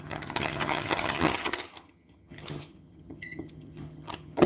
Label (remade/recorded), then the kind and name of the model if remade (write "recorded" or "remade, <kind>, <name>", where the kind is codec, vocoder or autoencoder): remade, vocoder, HiFi-GAN